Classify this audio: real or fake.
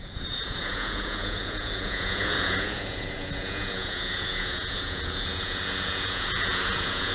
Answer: fake